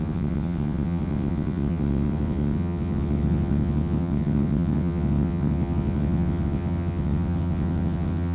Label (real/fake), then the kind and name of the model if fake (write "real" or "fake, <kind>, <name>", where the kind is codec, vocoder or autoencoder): fake, vocoder, WaveNeXt